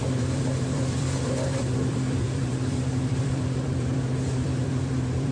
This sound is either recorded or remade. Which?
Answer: remade